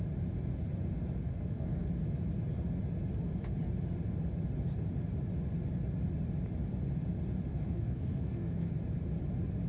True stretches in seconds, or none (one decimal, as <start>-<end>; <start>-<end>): 0.0-1.3; 1.9-7.5; 8.7-9.7